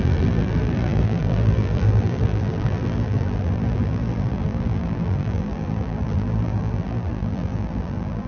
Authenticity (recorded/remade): remade